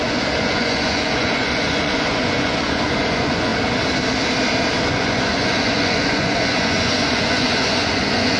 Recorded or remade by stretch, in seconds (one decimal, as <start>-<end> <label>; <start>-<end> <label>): 0.0-3.5 remade; 3.5-4.8 recorded; 4.8-8.4 remade